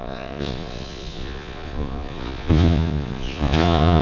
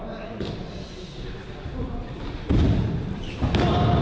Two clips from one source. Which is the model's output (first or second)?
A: first